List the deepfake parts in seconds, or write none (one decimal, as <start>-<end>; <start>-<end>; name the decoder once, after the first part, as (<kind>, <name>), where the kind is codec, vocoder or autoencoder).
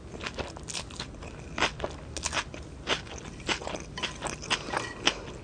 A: none